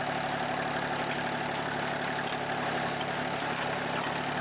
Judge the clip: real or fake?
real